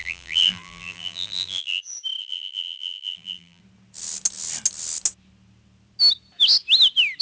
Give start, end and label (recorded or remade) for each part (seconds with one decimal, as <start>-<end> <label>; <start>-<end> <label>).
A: 0.0-1.8 remade; 1.8-2.2 recorded; 2.2-3.6 remade; 3.6-7.2 recorded